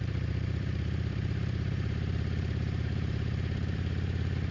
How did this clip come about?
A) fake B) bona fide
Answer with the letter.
A